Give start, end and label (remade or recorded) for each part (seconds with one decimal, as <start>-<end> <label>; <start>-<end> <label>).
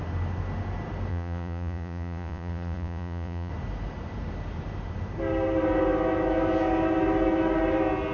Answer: 0.0-1.1 recorded; 1.1-3.5 remade; 3.5-8.1 recorded